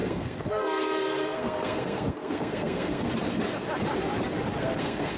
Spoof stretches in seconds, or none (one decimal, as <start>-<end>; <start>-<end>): 0.0-3.1; 4.6-5.2